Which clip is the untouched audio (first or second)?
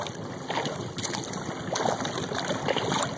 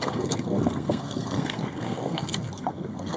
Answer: first